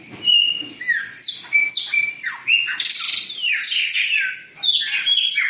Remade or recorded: recorded